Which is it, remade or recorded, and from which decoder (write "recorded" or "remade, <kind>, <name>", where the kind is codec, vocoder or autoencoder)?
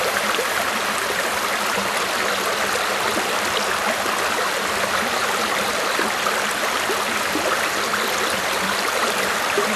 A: recorded